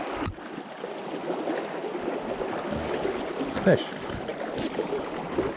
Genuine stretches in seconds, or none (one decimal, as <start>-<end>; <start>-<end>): 0.0-5.6